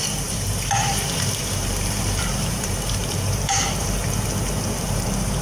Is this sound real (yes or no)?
no